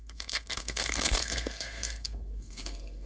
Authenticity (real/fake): fake